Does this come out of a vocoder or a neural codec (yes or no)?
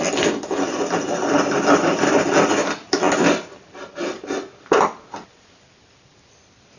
no